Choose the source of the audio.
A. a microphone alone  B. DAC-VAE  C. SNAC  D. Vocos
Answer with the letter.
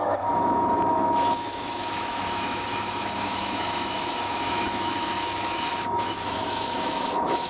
B